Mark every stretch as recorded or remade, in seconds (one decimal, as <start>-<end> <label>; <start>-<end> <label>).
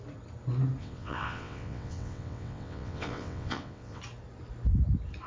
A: 0.0-0.8 recorded; 0.8-4.0 remade; 4.0-5.3 recorded